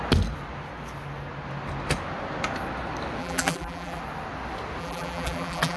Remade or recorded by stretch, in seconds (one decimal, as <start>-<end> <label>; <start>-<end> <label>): 0.0-3.2 recorded; 3.2-4.0 remade; 4.0-4.8 recorded; 4.8-5.8 remade